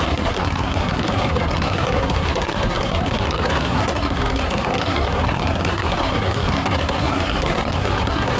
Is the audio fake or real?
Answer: fake